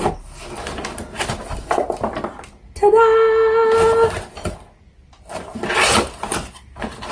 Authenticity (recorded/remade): recorded